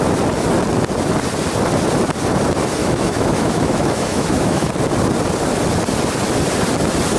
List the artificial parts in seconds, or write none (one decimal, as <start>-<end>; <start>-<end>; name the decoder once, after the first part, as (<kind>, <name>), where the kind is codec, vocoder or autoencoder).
2.8-4.7 (autoencoder, DAC-VAE)